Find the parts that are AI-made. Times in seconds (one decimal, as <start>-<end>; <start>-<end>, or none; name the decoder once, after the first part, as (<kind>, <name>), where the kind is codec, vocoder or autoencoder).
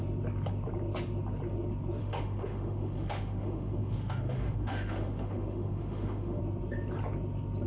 2.0-6.4 (autoencoder, DAC-VAE)